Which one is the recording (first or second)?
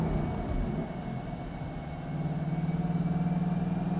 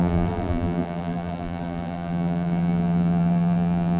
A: first